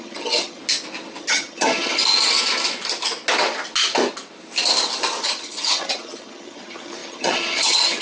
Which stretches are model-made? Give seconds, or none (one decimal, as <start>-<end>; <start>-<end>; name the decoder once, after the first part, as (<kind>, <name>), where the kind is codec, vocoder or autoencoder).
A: 0.0-0.6 (vocoder, HiFi-GAN); 1.2-2.0; 5.2-8.0